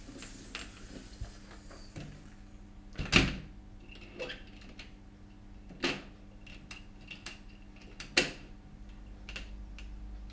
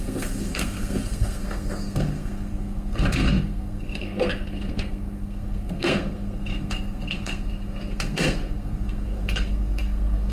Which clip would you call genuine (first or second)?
first